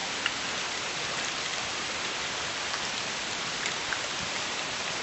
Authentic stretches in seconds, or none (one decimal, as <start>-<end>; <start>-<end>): 0.0-5.0